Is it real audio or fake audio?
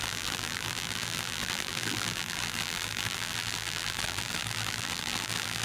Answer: fake